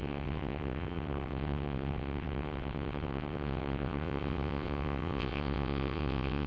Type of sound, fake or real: fake